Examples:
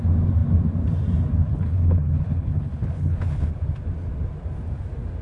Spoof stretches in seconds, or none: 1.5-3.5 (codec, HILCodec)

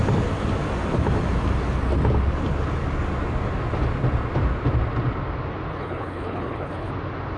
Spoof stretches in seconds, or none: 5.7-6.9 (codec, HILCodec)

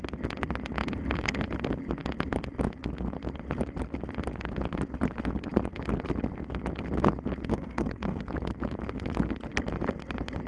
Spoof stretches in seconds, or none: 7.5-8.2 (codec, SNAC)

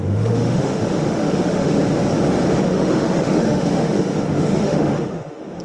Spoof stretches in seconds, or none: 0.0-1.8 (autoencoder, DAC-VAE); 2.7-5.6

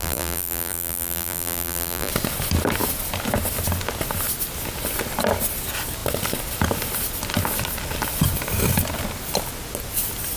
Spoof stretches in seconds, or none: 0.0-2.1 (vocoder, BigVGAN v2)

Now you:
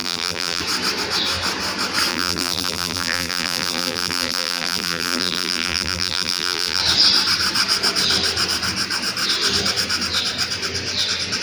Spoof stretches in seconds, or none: 0.0-0.6 (vocoder, BigVGAN v2); 2.1-6.8

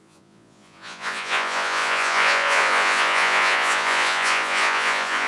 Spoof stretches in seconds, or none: 0.0-5.3 (vocoder, Vocos)